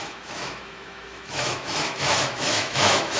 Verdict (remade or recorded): remade